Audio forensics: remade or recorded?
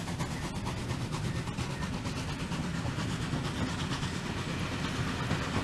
recorded